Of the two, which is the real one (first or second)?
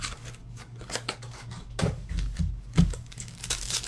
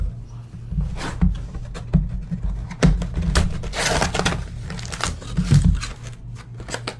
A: second